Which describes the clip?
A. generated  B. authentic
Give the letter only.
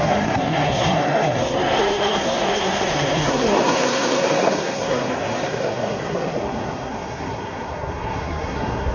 A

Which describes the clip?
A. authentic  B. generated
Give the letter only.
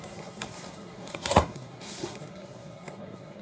B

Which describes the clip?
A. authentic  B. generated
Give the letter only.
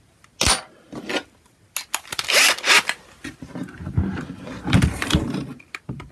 A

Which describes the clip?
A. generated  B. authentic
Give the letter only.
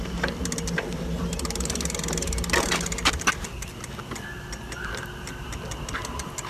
B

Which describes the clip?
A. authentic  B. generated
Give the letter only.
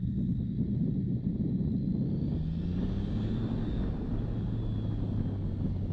A